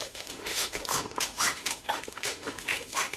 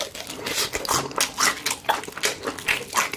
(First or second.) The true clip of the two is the second